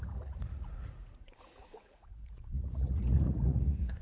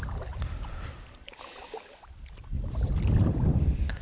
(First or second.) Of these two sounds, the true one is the second